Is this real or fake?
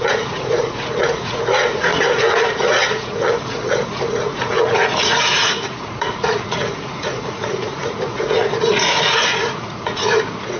fake